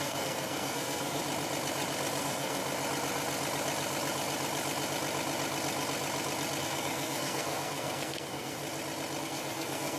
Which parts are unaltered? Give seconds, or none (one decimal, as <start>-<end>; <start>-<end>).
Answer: 1.2-2.2; 2.6-6.6; 8.6-9.2